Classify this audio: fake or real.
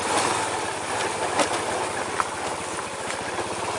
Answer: real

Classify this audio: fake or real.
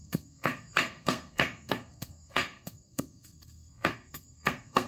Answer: fake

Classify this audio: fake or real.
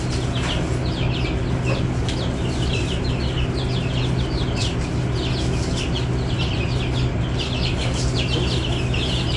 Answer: real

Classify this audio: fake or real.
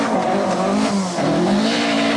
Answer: real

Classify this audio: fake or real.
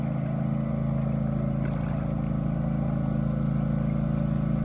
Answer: real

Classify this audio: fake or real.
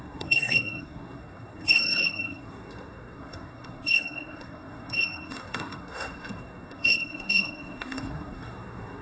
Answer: fake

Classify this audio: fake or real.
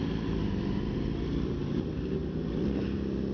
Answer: real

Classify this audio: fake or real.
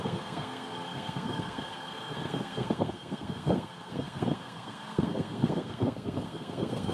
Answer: fake